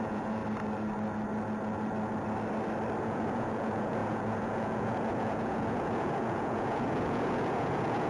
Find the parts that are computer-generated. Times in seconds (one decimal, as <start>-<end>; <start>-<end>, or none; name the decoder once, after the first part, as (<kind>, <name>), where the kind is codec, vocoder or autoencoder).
0.0-0.4 (vocoder, Vocos); 3.0-8.1